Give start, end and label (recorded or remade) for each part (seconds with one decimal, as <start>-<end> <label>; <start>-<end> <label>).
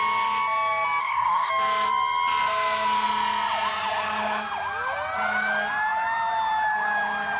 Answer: 0.0-1.0 recorded; 1.0-1.5 remade; 1.5-7.4 recorded